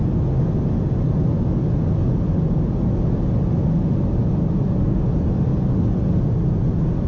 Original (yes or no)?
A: yes